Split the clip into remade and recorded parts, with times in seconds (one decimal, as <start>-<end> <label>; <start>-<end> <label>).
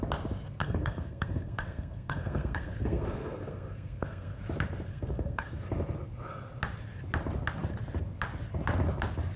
0.0-0.6 recorded; 0.6-4.4 remade; 4.4-4.9 recorded; 4.9-5.6 remade; 5.6-9.4 recorded